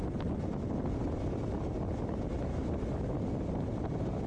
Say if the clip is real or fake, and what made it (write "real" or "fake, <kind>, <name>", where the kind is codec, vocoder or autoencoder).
real